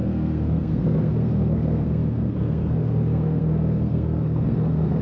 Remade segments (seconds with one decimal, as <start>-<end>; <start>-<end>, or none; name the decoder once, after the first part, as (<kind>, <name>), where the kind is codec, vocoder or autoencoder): 0.0-5.0 (codec, SNAC)